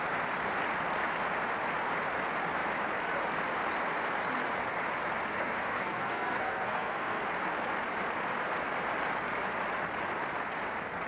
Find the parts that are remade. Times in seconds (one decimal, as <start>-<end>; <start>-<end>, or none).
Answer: 5.3-7.2